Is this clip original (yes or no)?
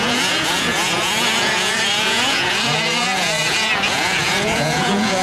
no